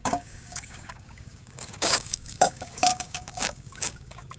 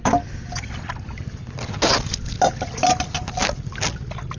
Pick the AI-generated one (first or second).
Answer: first